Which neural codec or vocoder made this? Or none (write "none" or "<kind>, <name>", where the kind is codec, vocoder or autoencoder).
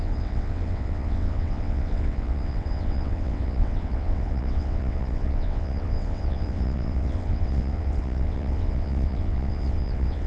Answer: vocoder, WaveNeXt